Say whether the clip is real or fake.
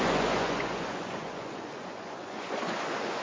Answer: fake